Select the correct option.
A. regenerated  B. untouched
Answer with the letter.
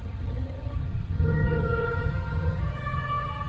A